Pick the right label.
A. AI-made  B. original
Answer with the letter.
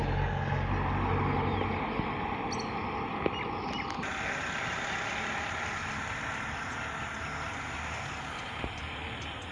B